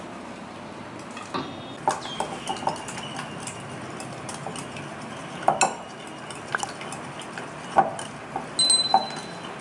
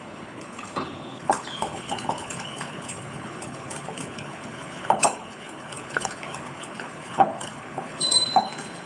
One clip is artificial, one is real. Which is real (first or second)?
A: first